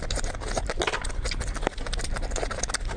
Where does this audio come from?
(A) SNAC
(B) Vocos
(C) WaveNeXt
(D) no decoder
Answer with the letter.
D